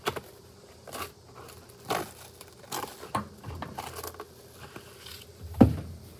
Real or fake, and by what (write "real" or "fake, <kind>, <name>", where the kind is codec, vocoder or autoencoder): real